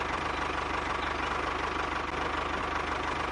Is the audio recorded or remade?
recorded